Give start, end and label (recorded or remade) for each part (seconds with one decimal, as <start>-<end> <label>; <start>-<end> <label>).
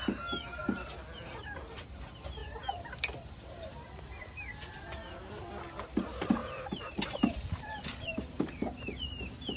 0.0-2.4 recorded; 2.4-5.2 remade; 5.2-6.4 recorded; 6.4-8.2 remade; 8.2-9.6 recorded